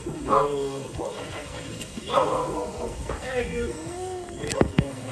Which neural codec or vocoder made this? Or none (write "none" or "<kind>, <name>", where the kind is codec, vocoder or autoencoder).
codec, SNAC